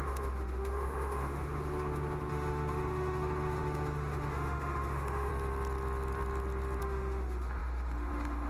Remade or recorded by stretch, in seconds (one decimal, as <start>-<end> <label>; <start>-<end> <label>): 0.0-5.3 remade; 5.3-6.8 recorded; 6.8-8.5 remade